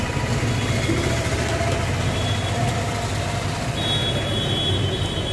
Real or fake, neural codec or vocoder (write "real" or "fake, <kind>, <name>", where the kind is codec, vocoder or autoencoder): real